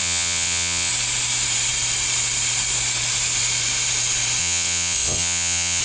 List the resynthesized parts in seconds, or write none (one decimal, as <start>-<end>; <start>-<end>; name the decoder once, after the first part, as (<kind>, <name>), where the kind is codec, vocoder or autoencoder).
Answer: 0.0-0.9 (vocoder, WaveNeXt); 4.4-5.8